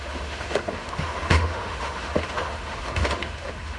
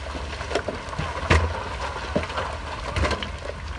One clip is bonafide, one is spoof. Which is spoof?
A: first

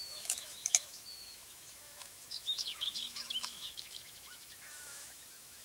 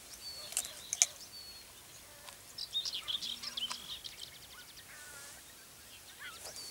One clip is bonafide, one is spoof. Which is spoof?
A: first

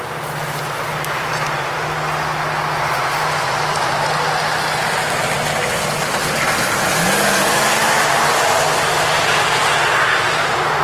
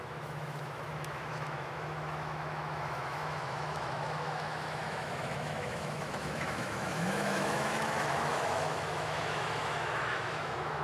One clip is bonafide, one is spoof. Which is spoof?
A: second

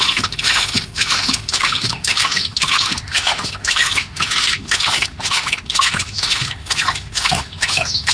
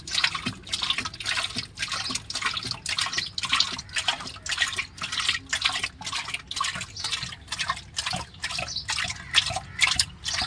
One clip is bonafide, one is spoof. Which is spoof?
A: first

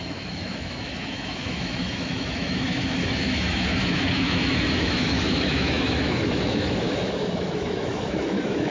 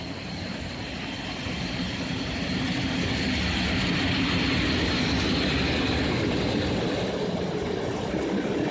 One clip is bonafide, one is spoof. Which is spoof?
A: first